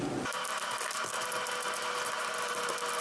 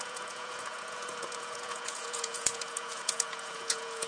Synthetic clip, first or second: second